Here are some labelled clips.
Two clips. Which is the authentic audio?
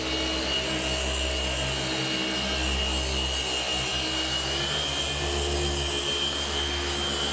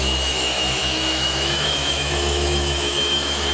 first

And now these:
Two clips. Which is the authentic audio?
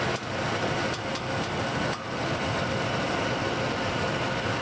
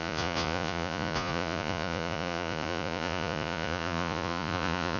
first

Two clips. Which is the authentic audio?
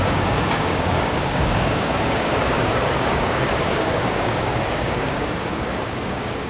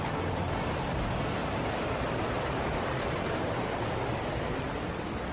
second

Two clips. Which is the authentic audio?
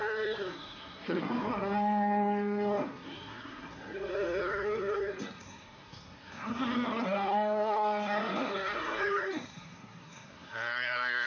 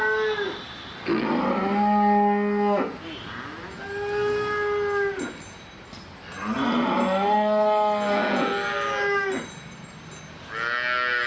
second